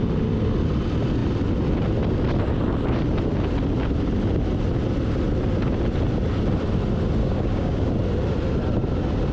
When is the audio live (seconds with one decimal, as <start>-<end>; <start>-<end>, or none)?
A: 0.0-7.2; 7.9-9.3